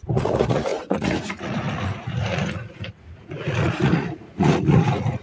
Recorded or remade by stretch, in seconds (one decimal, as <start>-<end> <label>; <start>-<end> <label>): 0.0-5.2 remade